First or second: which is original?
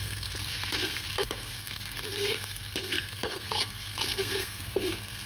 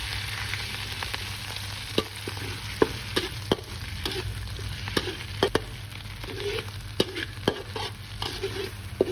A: second